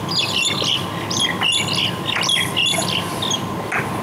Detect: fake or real real